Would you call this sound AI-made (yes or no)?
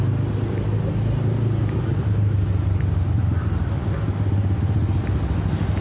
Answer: no